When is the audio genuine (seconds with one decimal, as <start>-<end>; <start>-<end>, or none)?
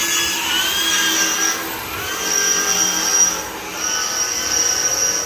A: 0.0-5.3